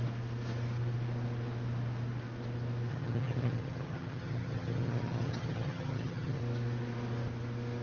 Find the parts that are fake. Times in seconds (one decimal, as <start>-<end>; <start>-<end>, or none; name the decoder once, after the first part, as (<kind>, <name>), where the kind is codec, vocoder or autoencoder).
2.9-6.4 (vocoder, HiFi-GAN)